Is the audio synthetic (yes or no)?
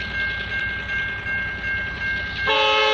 no